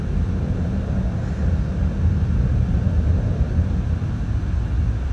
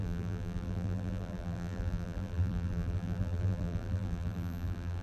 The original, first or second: first